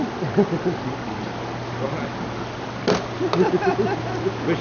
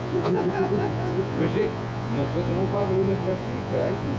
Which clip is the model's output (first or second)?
second